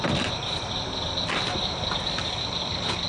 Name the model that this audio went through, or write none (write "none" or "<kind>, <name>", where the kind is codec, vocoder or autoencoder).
vocoder, BigVGAN v2